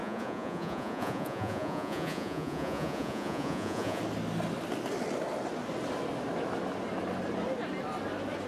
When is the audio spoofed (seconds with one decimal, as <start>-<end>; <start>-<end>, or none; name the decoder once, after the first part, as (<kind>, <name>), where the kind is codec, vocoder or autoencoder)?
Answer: 0.0-4.0 (vocoder, Vocos)